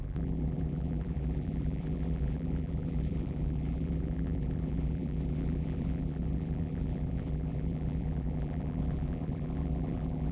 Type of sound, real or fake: fake